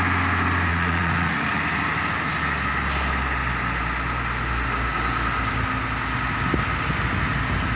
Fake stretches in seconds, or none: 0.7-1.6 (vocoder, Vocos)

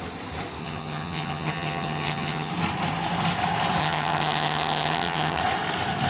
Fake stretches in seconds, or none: 0.6-2.5 (vocoder, HiFi-GAN); 3.8-5.4

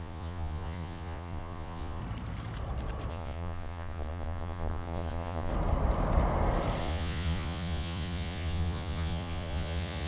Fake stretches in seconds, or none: 0.0-2.0 (vocoder, Vocos); 3.1-5.5; 6.8-10.1

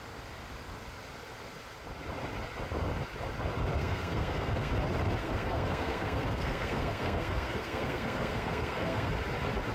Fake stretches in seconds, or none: 3.8-4.7 (codec, SNAC); 5.2-9.1

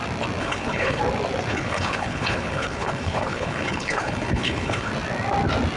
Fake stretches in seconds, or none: 0.4-1.0 (codec, HILCodec); 1.5-4.9

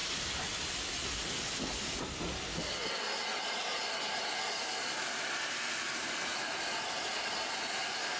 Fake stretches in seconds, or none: none